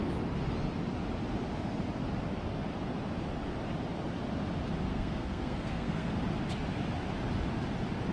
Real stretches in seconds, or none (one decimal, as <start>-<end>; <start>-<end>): 0.0-4.9; 6.1-8.1